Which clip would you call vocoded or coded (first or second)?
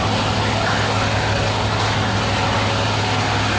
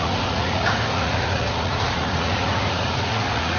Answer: second